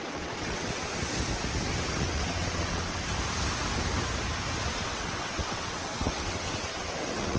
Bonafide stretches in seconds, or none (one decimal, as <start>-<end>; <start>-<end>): 0.9-1.9; 3.1-4.7